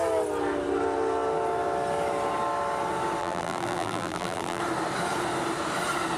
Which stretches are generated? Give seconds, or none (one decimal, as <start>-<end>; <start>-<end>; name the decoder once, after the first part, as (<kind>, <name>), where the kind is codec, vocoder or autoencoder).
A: 3.2-4.6 (vocoder, BigVGAN v2)